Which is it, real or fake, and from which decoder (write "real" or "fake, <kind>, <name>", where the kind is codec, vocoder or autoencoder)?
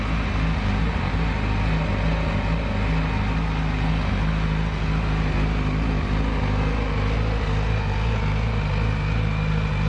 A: real